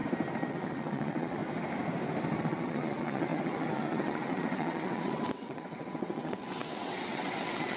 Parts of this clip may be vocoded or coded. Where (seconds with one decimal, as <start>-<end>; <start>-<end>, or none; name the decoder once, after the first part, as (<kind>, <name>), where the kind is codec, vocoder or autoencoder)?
0.5-1.4 (vocoder, WaveNeXt); 2.4-7.8